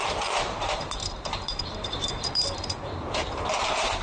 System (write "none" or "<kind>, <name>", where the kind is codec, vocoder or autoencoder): vocoder, BigVGAN v2